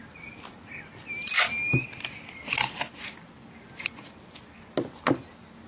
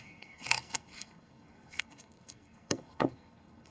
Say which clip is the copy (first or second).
second